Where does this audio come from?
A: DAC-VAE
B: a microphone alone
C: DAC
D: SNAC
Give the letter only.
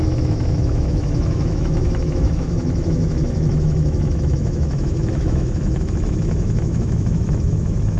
A